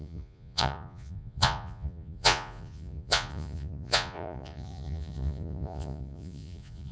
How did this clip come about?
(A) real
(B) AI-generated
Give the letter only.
B